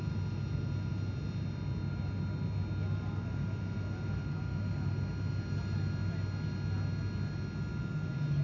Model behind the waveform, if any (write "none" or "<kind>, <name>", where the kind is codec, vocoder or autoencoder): none